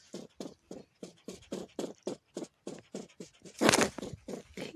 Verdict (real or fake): fake